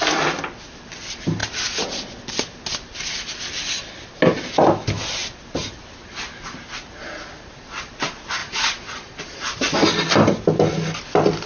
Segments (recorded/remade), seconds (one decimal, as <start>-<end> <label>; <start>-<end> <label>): 0.0-8.4 recorded; 8.4-9.2 remade; 9.2-11.5 recorded